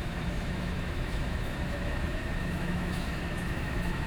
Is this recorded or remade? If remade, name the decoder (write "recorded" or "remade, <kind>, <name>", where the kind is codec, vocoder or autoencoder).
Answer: remade, autoencoder, DAC-VAE